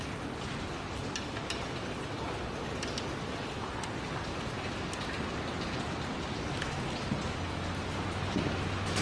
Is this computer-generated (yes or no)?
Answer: no